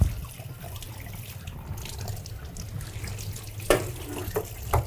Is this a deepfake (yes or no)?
no